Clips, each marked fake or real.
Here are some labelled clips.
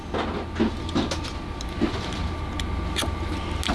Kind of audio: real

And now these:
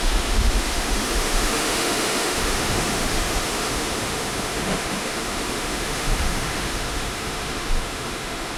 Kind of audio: fake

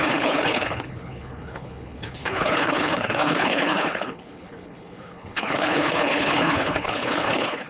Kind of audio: fake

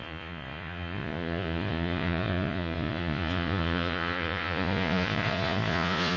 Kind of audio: fake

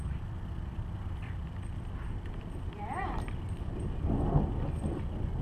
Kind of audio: real